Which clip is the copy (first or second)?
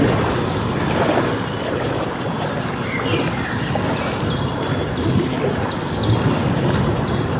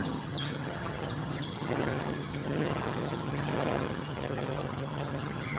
second